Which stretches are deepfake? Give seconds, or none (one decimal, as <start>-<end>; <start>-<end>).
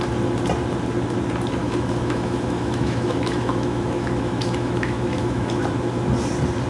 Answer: 1.6-5.6